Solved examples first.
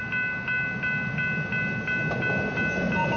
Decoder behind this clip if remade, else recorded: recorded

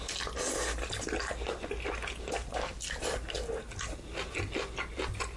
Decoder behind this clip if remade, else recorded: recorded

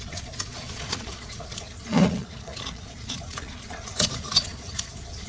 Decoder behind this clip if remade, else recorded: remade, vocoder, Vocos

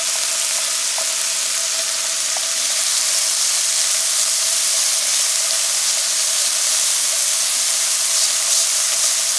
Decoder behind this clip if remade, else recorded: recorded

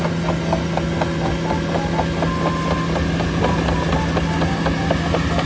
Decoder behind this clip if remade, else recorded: recorded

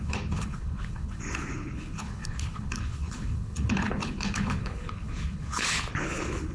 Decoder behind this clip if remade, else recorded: remade, codec, HILCodec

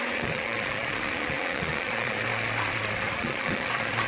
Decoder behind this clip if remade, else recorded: remade, vocoder, Vocos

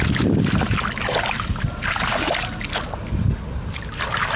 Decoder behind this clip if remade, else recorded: recorded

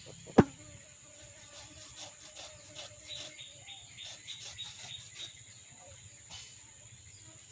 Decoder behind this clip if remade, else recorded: recorded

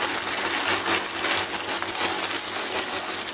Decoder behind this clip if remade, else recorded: recorded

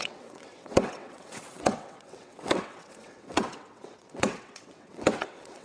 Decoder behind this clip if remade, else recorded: remade, vocoder, WaveNeXt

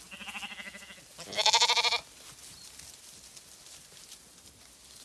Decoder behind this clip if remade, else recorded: recorded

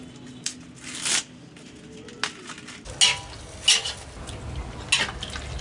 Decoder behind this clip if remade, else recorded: recorded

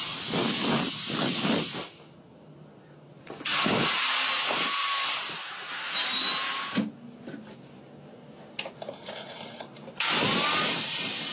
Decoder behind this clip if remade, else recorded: recorded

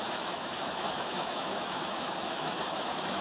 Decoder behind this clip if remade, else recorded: remade, autoencoder, DAC-VAE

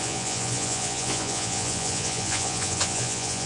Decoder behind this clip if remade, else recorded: remade, vocoder, Vocos